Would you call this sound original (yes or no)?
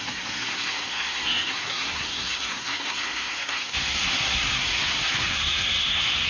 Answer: no